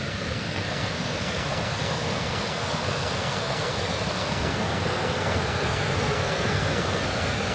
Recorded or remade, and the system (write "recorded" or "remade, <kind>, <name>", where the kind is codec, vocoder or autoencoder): remade, codec, SNAC